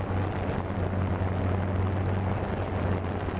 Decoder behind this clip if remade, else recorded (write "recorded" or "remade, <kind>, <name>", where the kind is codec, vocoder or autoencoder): recorded